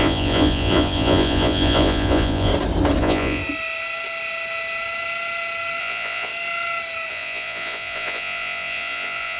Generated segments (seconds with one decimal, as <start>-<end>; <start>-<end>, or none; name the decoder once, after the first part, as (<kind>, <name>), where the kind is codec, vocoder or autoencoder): 0.0-2.5 (vocoder, Vocos); 3.0-3.4; 5.8-6.3; 7.1-9.4